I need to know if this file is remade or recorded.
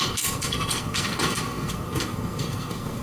remade